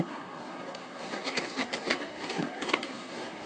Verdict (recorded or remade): remade